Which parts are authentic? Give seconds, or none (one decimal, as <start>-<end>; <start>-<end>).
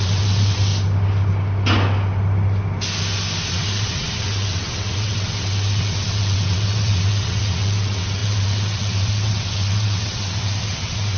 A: 0.7-3.5